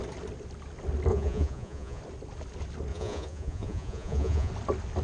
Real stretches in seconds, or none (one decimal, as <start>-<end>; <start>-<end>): 0.0-1.1; 2.0-2.9; 4.5-5.0